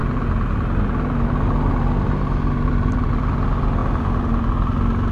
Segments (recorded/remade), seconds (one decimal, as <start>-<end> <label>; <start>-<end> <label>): 0.0-5.1 recorded